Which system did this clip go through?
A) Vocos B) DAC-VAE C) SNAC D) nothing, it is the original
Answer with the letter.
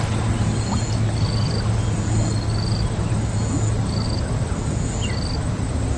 D